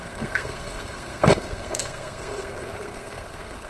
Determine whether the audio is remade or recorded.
remade